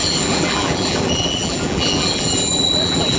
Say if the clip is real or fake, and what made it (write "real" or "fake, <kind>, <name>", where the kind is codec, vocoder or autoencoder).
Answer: fake, vocoder, BigVGAN v2